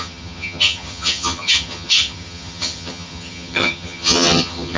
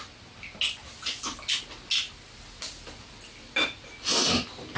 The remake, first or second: first